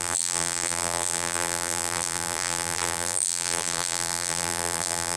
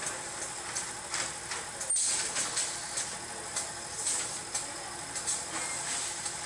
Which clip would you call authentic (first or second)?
second